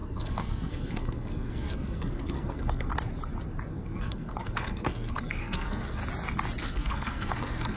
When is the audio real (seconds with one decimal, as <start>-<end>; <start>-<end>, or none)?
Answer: 2.9-3.7; 6.0-6.6